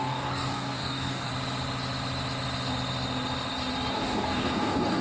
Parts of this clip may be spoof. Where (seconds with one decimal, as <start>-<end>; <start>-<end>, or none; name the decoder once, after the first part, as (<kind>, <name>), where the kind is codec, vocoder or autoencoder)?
0.0-1.3 (codec, DAC); 3.9-5.0